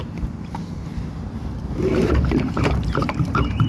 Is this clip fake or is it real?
fake